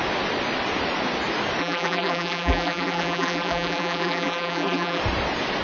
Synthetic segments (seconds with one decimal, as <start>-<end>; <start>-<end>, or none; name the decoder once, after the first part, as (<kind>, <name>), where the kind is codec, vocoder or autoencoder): 1.6-5.0 (vocoder, BigVGAN v2)